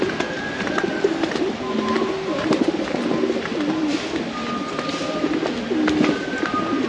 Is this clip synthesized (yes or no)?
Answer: no